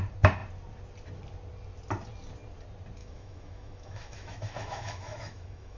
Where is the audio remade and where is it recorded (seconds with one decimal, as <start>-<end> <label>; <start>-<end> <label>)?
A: 0.0-3.0 recorded; 3.0-5.8 remade